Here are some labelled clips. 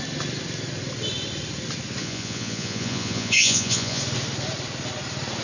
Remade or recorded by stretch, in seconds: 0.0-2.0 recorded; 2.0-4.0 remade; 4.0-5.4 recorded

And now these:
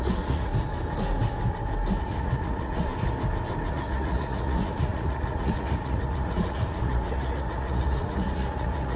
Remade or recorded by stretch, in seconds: 0.0-0.5 remade; 0.5-2.0 recorded; 2.0-2.9 remade; 2.9-3.7 recorded; 3.7-9.0 remade

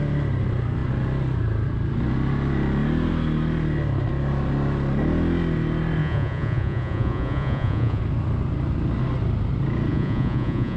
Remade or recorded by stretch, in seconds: 0.0-6.0 recorded; 6.0-8.0 remade; 8.0-9.9 recorded; 9.9-10.8 remade